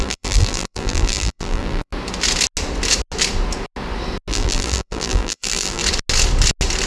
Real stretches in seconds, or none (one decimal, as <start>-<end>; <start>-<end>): 1.9-4.3; 5.8-6.9